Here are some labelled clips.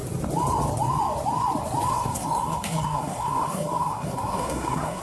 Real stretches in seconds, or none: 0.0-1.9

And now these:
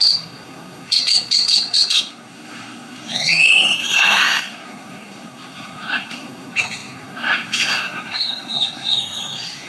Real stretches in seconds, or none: none

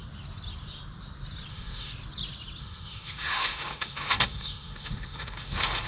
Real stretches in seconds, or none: 0.0-1.5; 1.9-2.6

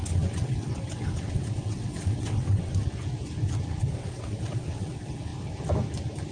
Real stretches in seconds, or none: 2.7-3.8; 5.3-6.3

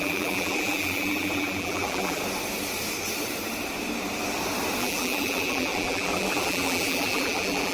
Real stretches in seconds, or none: 2.2-4.8

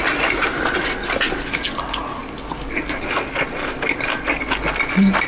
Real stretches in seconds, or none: 0.0-5.3

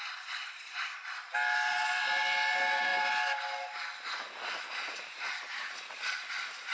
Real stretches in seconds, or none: 0.0-6.7

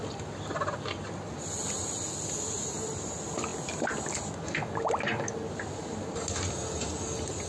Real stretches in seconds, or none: 0.0-7.5